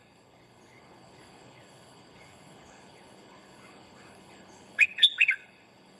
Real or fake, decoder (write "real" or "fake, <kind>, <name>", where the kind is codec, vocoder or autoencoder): fake, codec, HILCodec